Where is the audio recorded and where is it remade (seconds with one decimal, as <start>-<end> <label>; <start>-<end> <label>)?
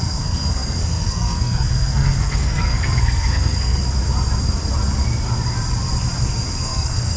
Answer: 0.0-3.8 remade; 3.8-6.6 recorded; 6.6-7.2 remade